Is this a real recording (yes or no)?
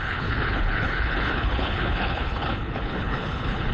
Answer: no